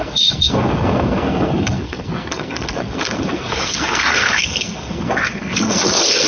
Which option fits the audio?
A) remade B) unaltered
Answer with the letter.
A